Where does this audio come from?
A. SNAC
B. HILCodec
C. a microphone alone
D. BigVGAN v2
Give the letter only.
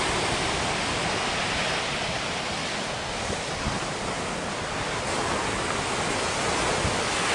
C